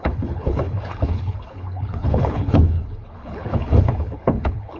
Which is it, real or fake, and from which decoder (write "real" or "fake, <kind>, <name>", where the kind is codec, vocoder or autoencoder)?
fake, codec, HILCodec